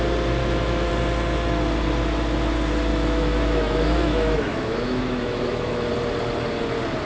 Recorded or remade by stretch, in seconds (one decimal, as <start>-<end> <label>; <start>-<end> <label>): 0.0-0.4 recorded; 0.4-0.9 remade; 0.9-2.9 recorded; 2.9-5.9 remade; 5.9-7.1 recorded